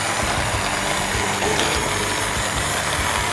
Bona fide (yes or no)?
yes